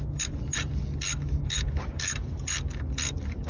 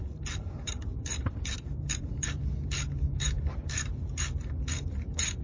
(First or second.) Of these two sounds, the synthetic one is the second